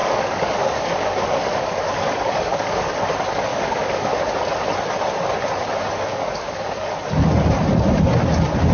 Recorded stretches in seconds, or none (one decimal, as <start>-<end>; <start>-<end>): 3.0-3.5; 4.1-6.1; 6.9-8.7